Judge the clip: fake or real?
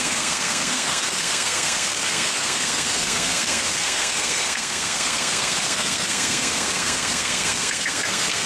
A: fake